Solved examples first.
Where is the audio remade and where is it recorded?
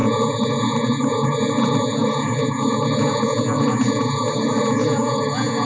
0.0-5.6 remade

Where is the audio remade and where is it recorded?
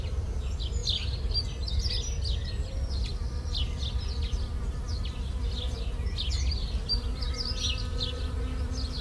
0.0-9.0 recorded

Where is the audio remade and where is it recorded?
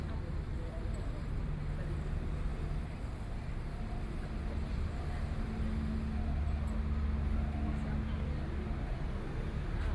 0.0-0.5 recorded; 0.5-1.4 remade; 1.4-9.9 recorded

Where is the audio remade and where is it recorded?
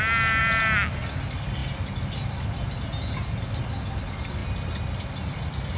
0.0-5.8 recorded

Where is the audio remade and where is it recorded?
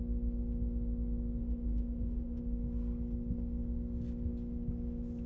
0.0-1.4 recorded; 1.4-2.4 remade; 2.4-5.3 recorded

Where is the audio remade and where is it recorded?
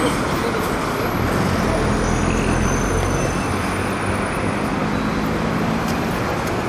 0.0-6.7 recorded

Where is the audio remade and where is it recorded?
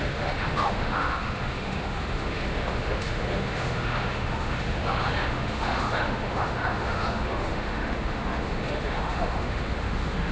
0.0-10.3 remade